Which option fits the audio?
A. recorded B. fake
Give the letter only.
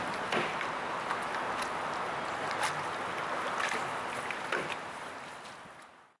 A